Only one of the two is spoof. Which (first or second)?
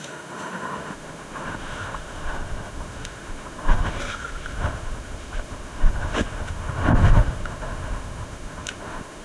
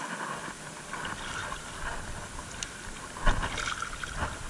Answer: first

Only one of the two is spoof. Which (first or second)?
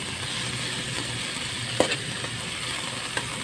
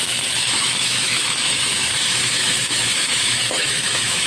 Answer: second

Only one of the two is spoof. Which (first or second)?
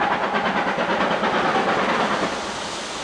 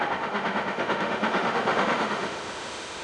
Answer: second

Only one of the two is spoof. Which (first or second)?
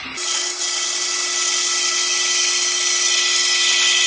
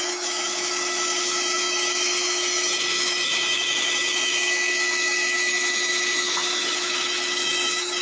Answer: second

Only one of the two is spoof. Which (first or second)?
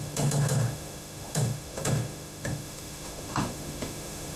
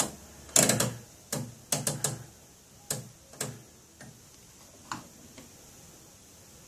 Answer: first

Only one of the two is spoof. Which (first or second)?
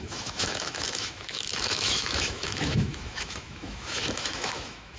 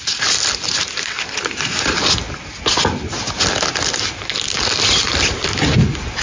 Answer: first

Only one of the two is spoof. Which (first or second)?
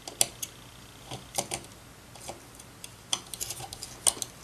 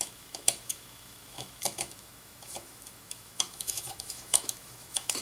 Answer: second